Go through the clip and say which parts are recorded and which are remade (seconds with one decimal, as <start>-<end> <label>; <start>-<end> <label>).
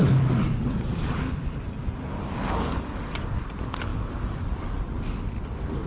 0.0-5.9 recorded